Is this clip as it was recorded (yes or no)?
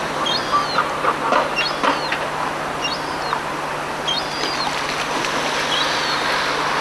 yes